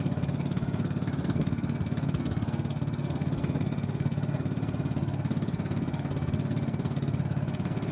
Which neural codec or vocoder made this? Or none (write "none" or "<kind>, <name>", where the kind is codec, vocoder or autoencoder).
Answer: codec, SNAC